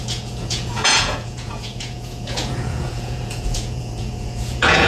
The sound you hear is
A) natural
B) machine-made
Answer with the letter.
B